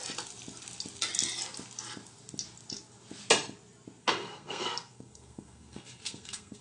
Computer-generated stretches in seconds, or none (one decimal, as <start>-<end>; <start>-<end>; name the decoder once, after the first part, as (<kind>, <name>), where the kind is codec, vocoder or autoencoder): 4.0-6.6 (codec, SNAC)